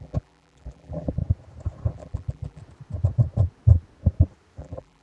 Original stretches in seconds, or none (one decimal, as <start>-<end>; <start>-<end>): 1.2-1.9; 2.6-4.6